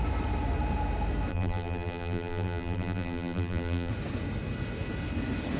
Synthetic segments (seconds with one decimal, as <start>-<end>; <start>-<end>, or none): 1.3-3.9